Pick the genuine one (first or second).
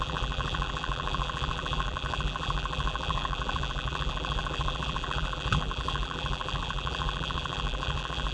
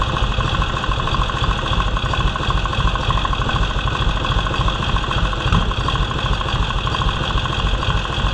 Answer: second